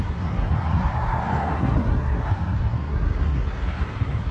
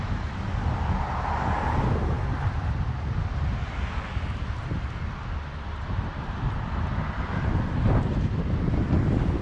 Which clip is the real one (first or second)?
second